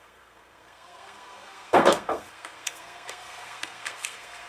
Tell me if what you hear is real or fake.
fake